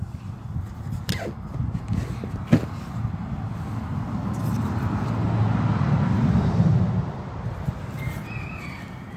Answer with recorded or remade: recorded